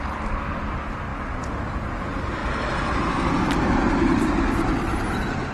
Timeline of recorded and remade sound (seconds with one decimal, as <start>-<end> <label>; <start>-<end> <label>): 0.0-2.4 recorded; 2.4-5.5 remade